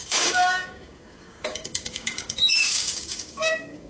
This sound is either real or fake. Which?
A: fake